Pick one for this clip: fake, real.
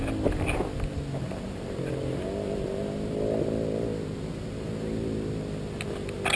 real